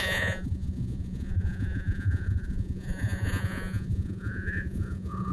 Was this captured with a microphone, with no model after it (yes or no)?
no